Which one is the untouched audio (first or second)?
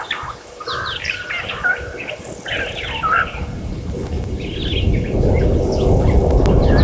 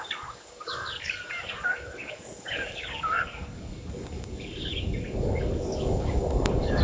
first